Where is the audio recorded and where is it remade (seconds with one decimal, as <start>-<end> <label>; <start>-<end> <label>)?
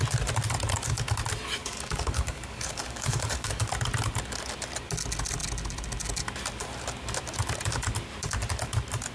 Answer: 0.0-1.6 recorded; 1.6-3.7 remade; 3.7-9.1 recorded